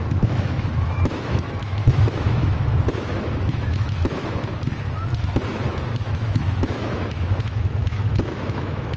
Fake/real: fake